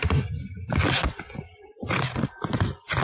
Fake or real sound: real